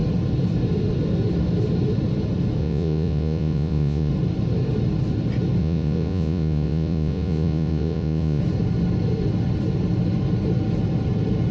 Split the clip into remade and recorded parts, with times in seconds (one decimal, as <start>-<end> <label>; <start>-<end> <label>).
0.0-2.6 recorded; 2.6-4.1 remade; 4.1-5.6 recorded; 5.6-8.4 remade; 8.4-11.5 recorded

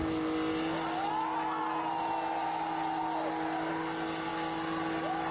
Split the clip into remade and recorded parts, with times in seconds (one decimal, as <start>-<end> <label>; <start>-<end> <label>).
0.0-5.3 recorded

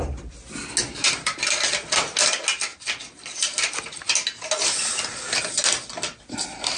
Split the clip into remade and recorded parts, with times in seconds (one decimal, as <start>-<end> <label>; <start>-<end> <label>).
0.0-6.8 recorded

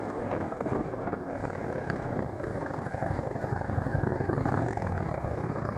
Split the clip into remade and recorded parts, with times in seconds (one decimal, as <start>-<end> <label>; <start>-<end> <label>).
0.0-5.8 remade

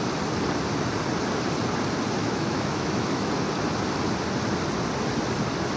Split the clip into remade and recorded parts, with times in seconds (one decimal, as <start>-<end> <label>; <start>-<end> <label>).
0.0-2.2 recorded; 2.2-3.3 remade; 3.3-5.8 recorded

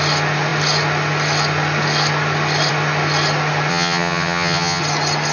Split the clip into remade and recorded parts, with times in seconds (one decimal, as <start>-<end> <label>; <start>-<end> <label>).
0.0-3.7 recorded; 3.7-4.8 remade; 4.8-5.3 recorded

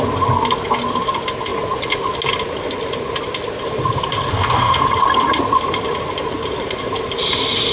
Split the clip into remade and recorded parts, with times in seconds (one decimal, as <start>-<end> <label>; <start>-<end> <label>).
0.0-4.3 recorded; 4.3-4.8 remade; 4.8-7.7 recorded

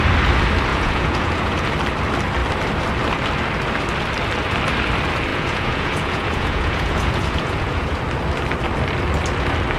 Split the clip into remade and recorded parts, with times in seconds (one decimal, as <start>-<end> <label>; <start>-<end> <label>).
0.0-0.7 recorded; 0.7-1.7 remade; 1.7-5.3 recorded; 5.3-8.0 remade; 8.0-9.8 recorded